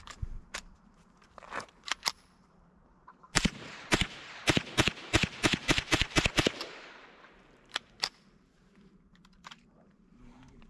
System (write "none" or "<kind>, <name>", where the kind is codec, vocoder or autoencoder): vocoder, BigVGAN v2